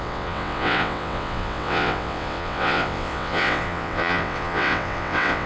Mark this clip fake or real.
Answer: fake